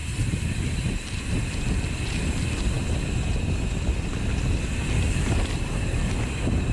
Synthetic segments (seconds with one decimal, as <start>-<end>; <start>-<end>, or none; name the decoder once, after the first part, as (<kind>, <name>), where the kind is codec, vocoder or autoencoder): 0.0-1.2 (vocoder, BigVGAN v2)